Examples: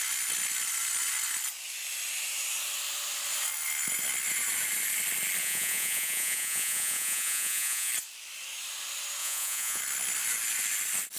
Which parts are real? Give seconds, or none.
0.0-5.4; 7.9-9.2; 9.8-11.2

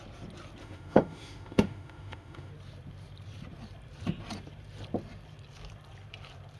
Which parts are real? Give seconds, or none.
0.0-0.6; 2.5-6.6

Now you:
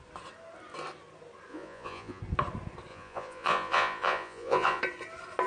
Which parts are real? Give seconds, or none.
0.0-1.5; 2.2-2.9; 4.8-5.5

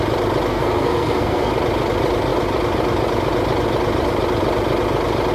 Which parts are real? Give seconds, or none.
0.0-0.5; 1.5-5.3

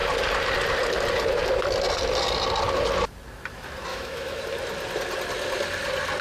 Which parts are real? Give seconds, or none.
0.0-3.9; 4.4-6.2

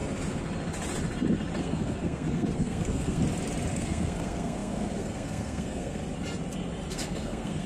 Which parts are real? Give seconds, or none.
0.0-1.6; 3.2-3.7; 6.0-6.9

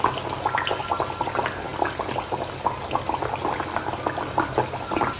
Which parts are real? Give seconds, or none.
0.0-5.2

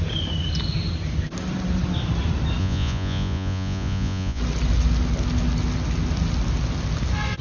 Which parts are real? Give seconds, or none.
0.0-2.6; 4.4-7.4